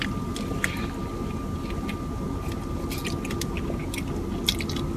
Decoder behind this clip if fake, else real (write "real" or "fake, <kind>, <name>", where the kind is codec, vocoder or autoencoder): real